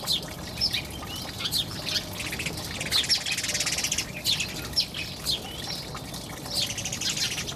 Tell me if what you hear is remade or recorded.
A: recorded